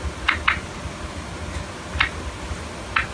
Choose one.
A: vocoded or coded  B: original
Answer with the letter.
B